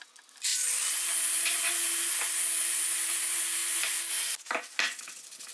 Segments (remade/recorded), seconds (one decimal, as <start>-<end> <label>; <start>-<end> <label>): 0.0-5.5 recorded